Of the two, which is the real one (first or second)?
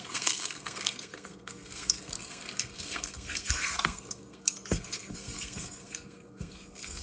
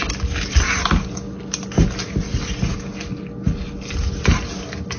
second